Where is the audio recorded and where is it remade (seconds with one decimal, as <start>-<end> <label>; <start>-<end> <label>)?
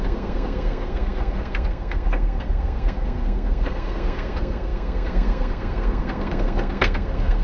0.0-7.4 remade